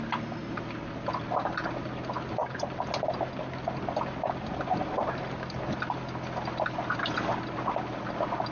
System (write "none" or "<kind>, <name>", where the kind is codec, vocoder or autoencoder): none